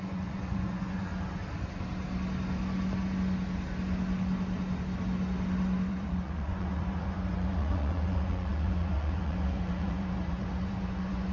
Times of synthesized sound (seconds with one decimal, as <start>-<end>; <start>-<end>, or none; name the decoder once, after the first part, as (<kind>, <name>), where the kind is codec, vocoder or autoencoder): 0.0-1.1 (vocoder, Vocos); 5.9-11.3